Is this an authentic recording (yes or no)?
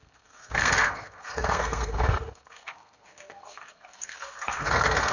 no